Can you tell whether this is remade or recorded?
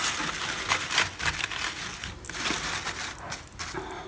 recorded